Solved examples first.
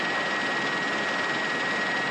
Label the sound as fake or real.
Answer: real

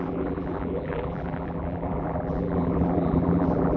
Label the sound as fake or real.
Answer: fake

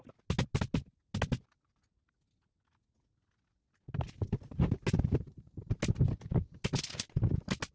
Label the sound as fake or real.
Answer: real